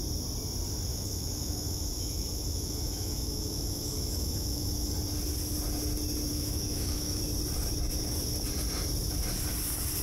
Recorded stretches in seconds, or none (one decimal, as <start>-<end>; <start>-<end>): 0.0-0.9; 4.9-6.3; 7.2-10.0